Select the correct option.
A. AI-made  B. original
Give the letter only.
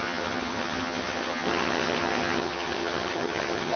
A